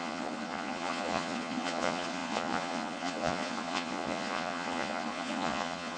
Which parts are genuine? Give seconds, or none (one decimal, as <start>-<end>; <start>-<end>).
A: none